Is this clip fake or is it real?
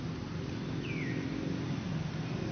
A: real